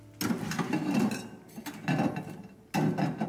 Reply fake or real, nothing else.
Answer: real